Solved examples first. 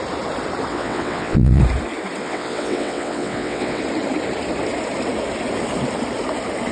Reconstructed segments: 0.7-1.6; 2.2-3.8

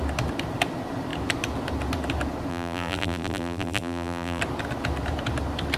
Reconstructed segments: 2.5-4.4

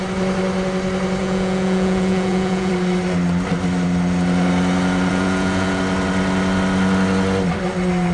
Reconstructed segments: 1.2-2.7; 5.1-5.8

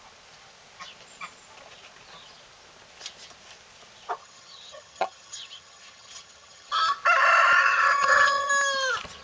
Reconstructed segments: 4.2-6.7; 7.6-8.5

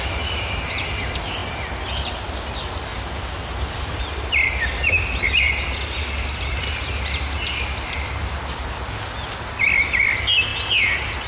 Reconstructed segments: 2.9-4.0

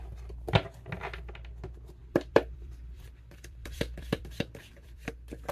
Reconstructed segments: 2.0-5.1

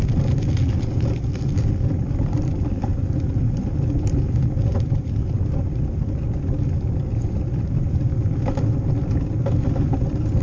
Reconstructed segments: none